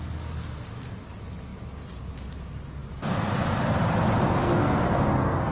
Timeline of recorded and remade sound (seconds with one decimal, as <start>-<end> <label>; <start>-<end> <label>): 0.0-4.4 recorded; 4.4-5.5 remade